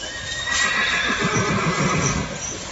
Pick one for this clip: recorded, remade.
recorded